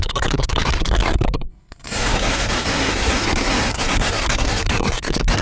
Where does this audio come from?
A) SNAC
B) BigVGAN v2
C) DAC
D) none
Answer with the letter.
A